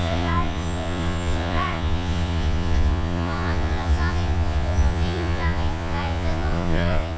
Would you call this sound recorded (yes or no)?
no